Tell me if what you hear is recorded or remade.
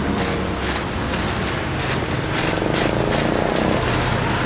recorded